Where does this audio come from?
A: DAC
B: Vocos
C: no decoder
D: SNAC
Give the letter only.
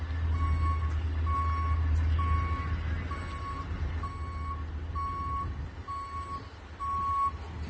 C